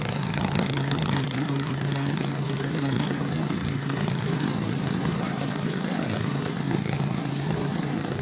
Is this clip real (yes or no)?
no